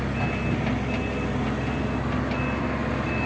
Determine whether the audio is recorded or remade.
recorded